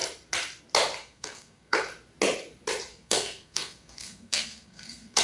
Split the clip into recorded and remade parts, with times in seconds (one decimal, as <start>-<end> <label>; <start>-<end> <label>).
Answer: 0.0-1.0 recorded; 1.0-1.8 remade; 1.8-2.9 recorded; 2.9-5.2 remade